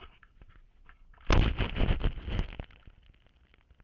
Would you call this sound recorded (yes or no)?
yes